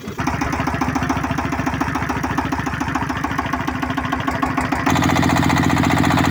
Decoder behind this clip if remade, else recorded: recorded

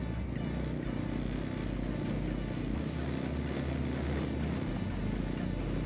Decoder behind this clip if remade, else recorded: recorded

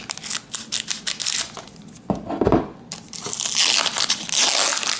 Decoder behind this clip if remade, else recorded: recorded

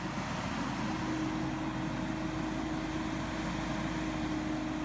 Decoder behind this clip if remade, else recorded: recorded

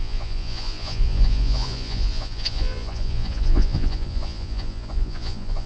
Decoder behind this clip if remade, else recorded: remade, vocoder, Vocos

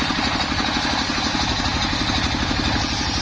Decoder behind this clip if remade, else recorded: recorded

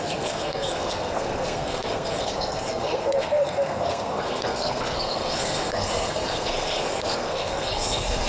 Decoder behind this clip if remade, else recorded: remade, codec, SNAC